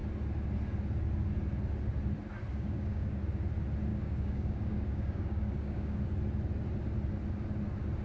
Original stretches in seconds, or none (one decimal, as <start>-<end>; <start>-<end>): 0.0-2.5; 3.2-3.9; 6.0-8.0